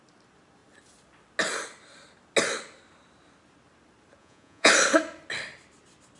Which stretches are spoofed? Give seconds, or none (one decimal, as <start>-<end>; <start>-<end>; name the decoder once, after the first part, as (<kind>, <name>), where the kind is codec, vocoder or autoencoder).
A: 4.2-4.7 (vocoder, Vocos)